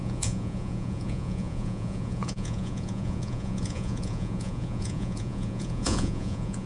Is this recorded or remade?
remade